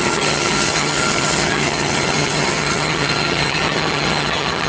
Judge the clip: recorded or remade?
remade